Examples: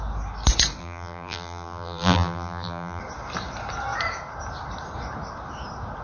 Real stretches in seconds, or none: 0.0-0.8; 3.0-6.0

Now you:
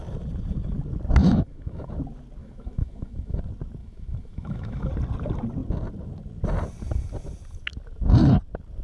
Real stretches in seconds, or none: 0.0-1.2; 1.9-2.4; 3.4-3.8; 4.9-8.8

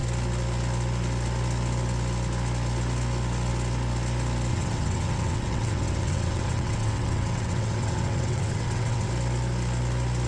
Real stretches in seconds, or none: 0.0-4.5; 9.1-10.3

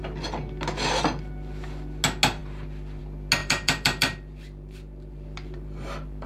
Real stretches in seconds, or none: 0.0-3.4

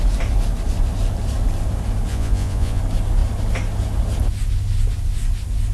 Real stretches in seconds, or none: 0.0-2.1; 2.8-5.7